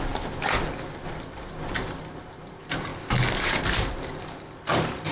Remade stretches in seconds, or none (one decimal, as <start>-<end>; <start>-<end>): none